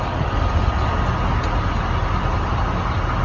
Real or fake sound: real